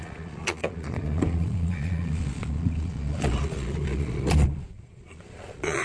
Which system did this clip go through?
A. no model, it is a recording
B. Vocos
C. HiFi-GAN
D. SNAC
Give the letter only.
B